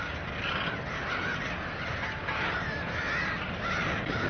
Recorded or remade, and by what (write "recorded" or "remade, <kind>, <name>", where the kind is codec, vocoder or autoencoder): recorded